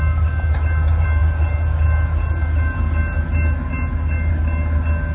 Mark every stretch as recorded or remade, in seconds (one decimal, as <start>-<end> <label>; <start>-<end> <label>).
0.0-5.1 recorded